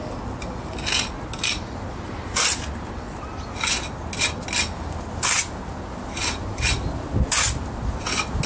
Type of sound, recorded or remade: recorded